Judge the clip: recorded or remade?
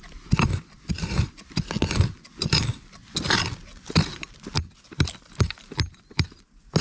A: recorded